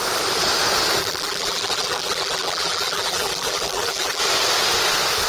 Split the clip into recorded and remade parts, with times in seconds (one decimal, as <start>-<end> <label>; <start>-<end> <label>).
0.0-1.0 recorded; 1.0-4.2 remade; 4.2-5.3 recorded

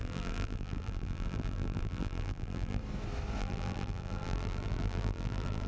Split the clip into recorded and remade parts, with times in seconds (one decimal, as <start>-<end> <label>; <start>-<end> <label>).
0.0-2.8 remade; 2.8-3.4 recorded; 3.4-5.7 remade

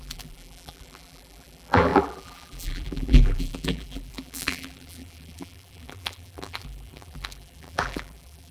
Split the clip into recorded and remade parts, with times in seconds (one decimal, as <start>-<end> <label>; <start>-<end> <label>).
0.0-8.5 remade

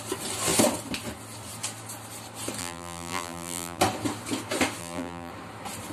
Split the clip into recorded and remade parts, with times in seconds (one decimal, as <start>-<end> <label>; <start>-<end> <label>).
0.0-2.6 recorded; 2.6-3.8 remade; 3.8-4.8 recorded; 4.8-5.3 remade; 5.3-5.9 recorded

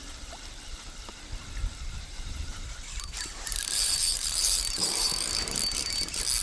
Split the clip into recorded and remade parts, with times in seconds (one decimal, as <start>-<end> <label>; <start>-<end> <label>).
0.0-1.6 recorded; 1.6-5.3 remade; 5.3-6.4 recorded